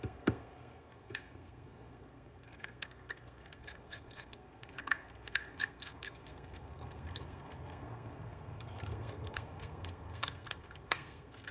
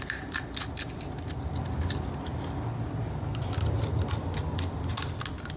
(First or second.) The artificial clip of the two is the first